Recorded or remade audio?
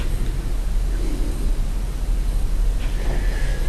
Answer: recorded